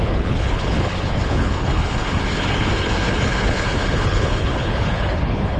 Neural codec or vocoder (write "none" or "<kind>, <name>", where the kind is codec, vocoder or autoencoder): codec, HILCodec